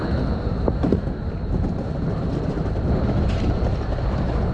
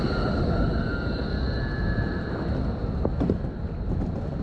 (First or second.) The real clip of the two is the second